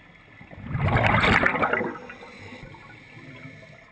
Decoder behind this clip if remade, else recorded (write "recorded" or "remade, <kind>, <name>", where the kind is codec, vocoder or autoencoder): recorded